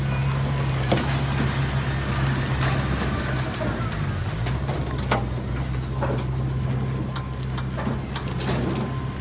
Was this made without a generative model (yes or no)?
yes